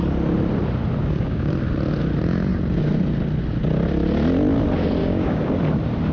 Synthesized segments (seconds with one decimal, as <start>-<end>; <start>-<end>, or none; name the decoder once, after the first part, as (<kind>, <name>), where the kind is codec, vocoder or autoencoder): 1.0-1.5 (codec, DAC); 5.0-5.5